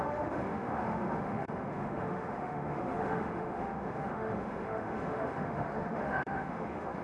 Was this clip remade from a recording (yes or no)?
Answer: yes